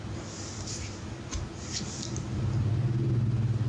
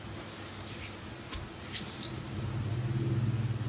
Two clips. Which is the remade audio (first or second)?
first